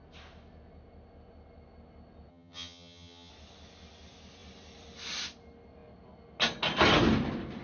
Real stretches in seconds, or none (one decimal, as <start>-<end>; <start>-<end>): 0.0-2.3; 3.3-7.6

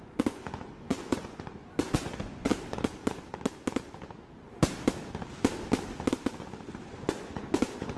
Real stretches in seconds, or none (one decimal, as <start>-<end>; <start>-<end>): 2.5-6.9

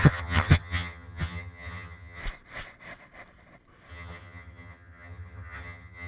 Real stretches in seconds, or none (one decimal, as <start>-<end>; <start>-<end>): 2.2-3.9